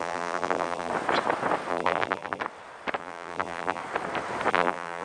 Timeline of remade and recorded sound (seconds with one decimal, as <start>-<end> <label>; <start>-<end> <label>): 0.0-0.9 remade; 0.9-1.7 recorded; 1.7-2.4 remade; 2.4-3.0 recorded; 3.0-3.8 remade; 3.8-4.5 recorded; 4.5-5.0 remade